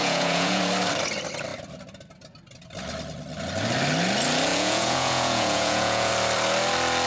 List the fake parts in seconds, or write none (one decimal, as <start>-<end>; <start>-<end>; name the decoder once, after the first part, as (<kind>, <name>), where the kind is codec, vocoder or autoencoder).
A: 0.0-0.6 (vocoder, Vocos); 4.5-6.1